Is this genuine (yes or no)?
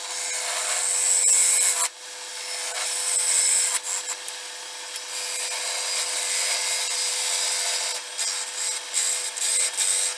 yes